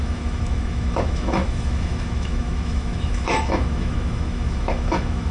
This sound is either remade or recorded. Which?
remade